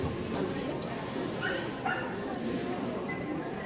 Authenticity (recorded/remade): recorded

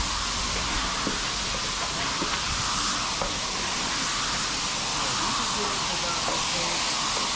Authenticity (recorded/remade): recorded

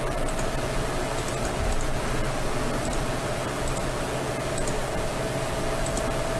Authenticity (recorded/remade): recorded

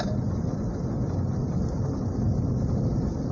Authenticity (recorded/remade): recorded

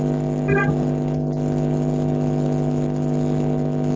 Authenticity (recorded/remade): recorded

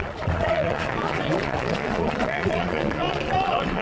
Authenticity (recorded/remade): remade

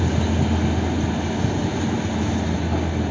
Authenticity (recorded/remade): recorded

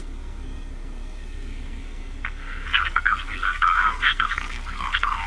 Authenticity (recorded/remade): remade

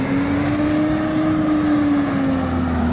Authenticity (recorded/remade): recorded